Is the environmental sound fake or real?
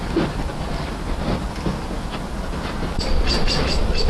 real